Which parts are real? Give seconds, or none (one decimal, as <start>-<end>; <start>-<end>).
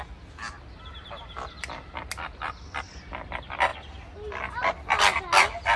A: 0.0-5.8